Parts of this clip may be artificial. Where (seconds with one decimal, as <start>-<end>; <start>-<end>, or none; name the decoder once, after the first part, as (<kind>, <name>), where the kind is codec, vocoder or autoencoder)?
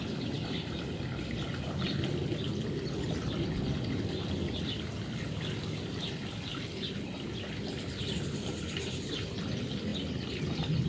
none